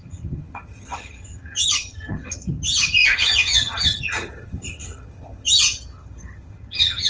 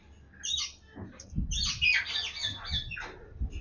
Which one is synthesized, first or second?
first